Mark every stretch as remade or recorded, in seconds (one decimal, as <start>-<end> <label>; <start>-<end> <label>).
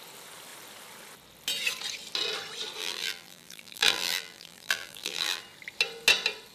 0.0-2.8 recorded; 2.8-5.4 remade; 5.4-6.5 recorded